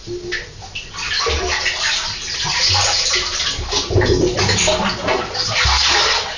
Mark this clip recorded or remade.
recorded